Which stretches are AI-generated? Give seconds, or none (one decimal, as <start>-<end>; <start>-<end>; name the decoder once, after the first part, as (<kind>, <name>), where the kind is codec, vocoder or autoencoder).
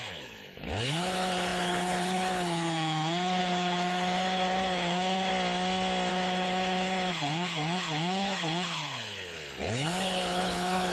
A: 0.0-5.3 (codec, HILCodec); 6.1-10.9